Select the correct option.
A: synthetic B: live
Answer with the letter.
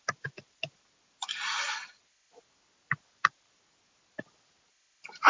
B